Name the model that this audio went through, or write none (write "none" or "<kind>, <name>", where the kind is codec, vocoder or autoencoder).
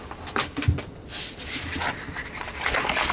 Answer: none